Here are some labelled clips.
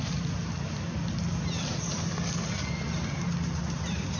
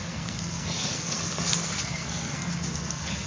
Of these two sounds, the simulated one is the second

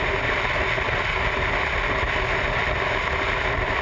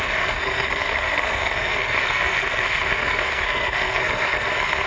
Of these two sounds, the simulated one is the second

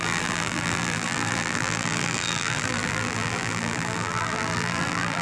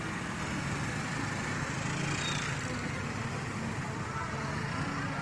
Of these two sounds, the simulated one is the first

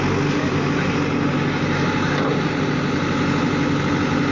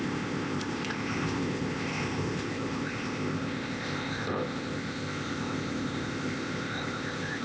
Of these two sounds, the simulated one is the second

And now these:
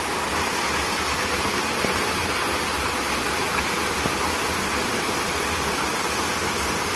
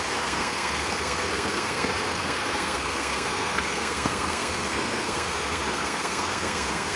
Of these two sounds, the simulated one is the second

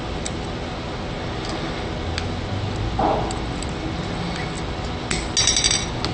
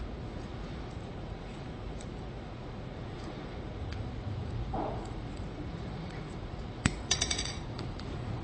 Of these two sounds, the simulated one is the second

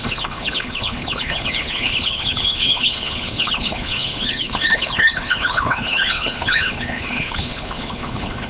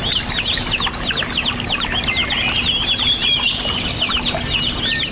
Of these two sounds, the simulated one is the first